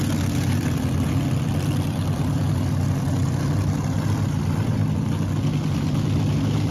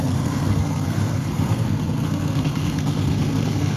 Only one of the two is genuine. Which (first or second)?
first